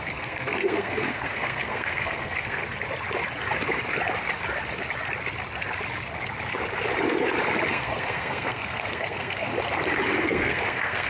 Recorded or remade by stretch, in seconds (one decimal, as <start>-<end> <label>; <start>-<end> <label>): 0.0-2.6 remade; 2.6-7.7 recorded; 7.7-9.5 remade; 9.5-10.2 recorded; 10.2-11.1 remade